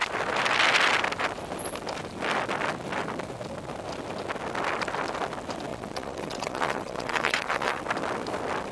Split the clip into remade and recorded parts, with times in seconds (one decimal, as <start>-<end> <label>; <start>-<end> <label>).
0.0-5.7 recorded; 5.7-7.8 remade; 7.8-8.7 recorded